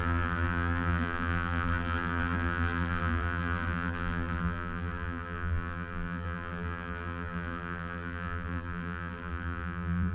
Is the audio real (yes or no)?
no